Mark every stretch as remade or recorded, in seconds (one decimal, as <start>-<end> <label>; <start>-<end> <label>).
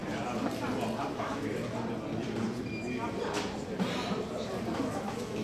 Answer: 0.0-1.2 recorded; 1.2-1.6 remade; 1.6-4.8 recorded; 4.8-5.4 remade